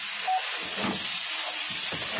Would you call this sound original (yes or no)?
yes